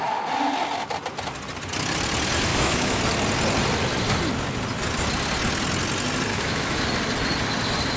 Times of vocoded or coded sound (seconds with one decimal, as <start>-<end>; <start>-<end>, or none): 2.5-3.0; 6.3-6.8